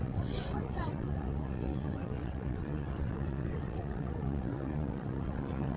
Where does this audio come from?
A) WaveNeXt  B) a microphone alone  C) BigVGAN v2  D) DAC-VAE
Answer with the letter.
A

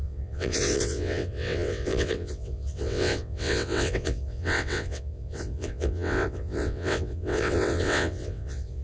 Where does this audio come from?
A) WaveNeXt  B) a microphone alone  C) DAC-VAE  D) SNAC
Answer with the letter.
A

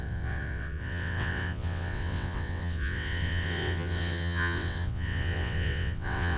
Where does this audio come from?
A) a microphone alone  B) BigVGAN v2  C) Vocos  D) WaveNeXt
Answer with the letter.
D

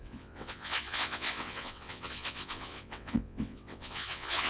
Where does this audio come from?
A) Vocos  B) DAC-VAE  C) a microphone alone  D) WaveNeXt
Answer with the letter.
D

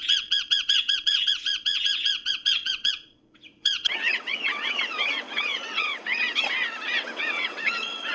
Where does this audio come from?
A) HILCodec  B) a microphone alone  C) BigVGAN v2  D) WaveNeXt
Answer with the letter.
D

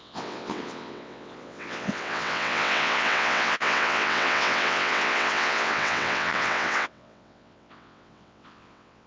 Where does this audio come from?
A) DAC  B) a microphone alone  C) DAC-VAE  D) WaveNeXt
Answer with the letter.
D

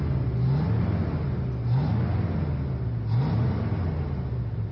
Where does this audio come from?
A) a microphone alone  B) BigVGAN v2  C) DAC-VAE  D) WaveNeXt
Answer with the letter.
A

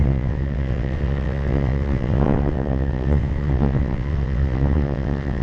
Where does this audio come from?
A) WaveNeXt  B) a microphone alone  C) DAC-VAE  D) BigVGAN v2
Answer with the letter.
A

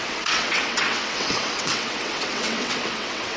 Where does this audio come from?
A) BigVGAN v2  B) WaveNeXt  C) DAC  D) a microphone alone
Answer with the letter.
B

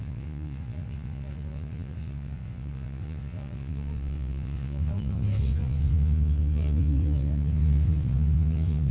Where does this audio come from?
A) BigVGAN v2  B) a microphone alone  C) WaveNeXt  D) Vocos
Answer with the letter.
C